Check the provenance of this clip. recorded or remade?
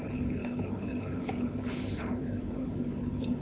remade